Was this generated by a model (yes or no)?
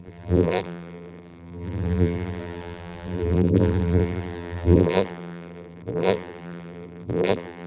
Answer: yes